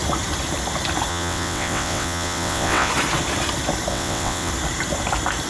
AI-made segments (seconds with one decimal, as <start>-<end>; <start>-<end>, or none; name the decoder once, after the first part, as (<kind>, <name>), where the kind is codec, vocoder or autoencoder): 1.1-2.9 (vocoder, WaveNeXt); 3.9-4.5